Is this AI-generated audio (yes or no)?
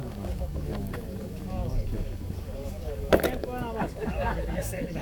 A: yes